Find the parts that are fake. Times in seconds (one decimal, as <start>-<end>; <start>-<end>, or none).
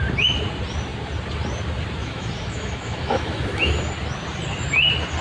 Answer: 2.0-3.9